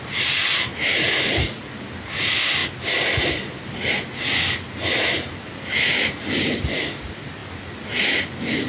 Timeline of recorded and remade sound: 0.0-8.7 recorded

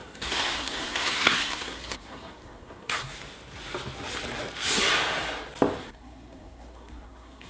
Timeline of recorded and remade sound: 0.0-3.2 remade; 3.2-5.8 recorded; 5.8-7.5 remade

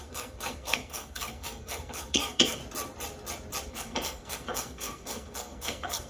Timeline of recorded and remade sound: 0.0-2.6 remade; 2.6-3.7 recorded; 3.7-6.1 remade

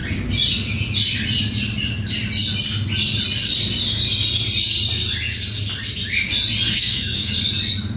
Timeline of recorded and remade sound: 0.0-6.7 recorded; 6.7-7.3 remade; 7.3-8.0 recorded